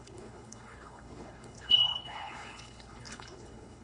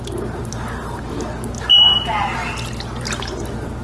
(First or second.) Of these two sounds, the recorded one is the second